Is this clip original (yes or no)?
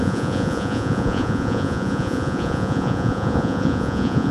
no